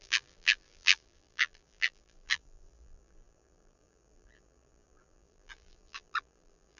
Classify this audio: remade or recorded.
remade